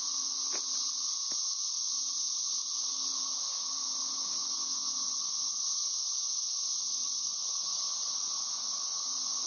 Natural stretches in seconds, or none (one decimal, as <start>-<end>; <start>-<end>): 0.0-4.4; 5.3-5.8; 9.0-9.5